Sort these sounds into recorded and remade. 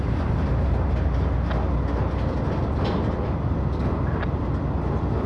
recorded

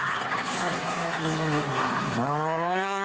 remade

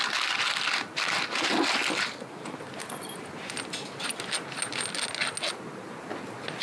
recorded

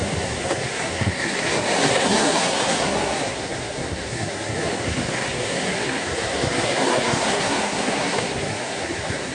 remade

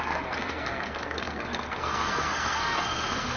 remade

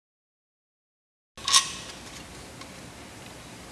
recorded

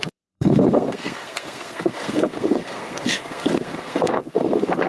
remade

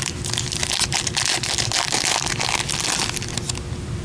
recorded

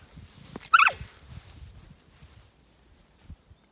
recorded